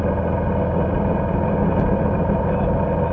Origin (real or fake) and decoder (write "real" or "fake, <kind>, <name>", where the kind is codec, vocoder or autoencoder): real